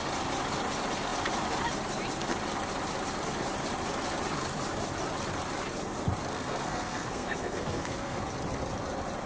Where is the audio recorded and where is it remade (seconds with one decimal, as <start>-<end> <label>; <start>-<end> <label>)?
0.0-6.3 recorded; 6.3-8.2 remade; 8.2-9.3 recorded

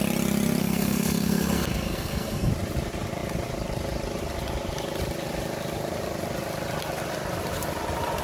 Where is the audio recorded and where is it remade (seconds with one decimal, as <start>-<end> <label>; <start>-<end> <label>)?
0.0-0.6 recorded; 0.6-2.5 remade; 2.5-8.2 recorded

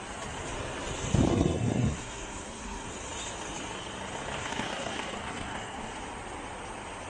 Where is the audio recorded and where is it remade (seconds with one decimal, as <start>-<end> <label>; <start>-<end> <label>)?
0.0-1.3 recorded; 1.3-2.9 remade; 2.9-4.4 recorded; 4.4-5.9 remade; 5.9-7.1 recorded